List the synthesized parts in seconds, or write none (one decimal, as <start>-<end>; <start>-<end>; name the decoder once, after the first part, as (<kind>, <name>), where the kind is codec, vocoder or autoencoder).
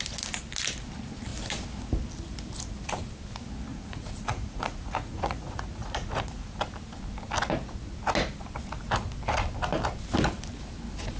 3.7-6.6 (vocoder, Vocos)